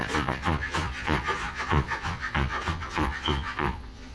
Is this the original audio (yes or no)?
no